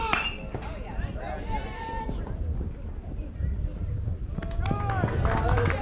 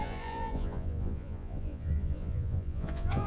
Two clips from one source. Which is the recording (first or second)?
first